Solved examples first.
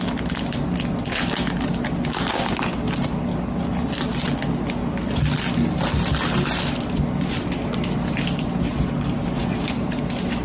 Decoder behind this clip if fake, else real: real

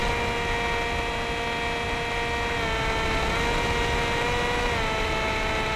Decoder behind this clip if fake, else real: real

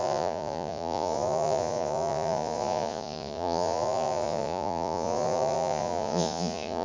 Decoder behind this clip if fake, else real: fake, vocoder, Vocos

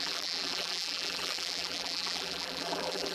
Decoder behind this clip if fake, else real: fake, vocoder, BigVGAN v2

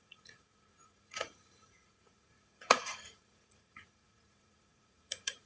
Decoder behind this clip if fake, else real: fake, vocoder, Vocos